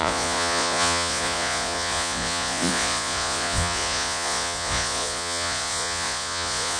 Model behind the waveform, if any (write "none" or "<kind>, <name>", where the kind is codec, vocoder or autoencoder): vocoder, Vocos